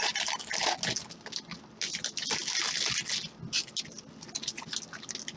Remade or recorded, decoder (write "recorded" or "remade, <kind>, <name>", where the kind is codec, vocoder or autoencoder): recorded